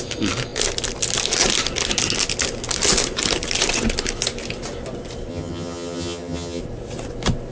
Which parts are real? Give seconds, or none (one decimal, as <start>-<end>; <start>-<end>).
0.0-5.3; 6.6-7.5